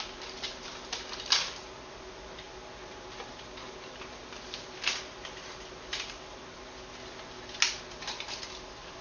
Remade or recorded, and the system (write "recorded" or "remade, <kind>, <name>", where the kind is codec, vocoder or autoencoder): recorded